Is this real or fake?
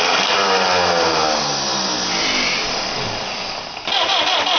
real